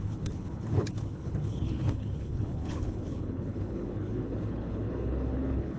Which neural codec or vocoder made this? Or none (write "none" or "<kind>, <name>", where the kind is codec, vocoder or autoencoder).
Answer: codec, HILCodec